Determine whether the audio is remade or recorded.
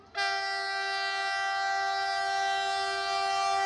recorded